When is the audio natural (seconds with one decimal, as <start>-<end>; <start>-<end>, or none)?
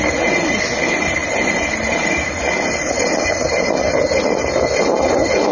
0.0-5.5